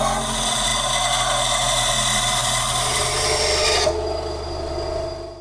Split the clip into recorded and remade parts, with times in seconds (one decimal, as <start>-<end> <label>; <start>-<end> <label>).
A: 0.0-5.4 recorded